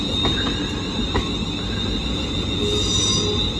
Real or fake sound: real